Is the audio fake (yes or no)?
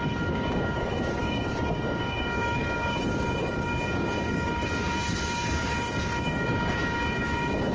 yes